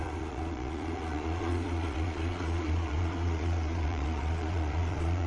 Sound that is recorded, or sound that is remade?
remade